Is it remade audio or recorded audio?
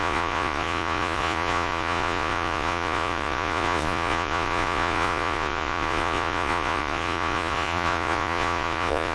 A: remade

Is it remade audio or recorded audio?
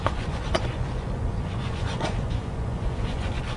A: remade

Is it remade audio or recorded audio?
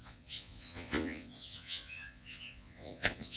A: remade